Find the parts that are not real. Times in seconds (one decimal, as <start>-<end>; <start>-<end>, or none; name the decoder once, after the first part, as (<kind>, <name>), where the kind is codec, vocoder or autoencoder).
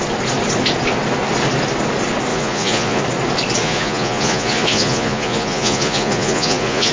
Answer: 2.3-3.0 (vocoder, Vocos); 3.6-6.9